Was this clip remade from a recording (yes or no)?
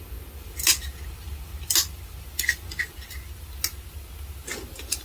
no